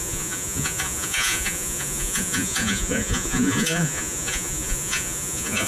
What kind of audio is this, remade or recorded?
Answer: remade